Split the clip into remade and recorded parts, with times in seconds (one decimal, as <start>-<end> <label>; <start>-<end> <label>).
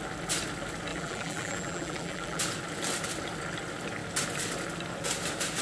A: 0.0-0.9 recorded; 0.9-2.4 remade; 2.4-5.6 recorded